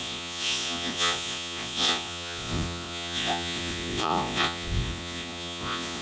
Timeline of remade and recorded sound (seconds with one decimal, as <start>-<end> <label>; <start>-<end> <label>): 0.0-6.0 remade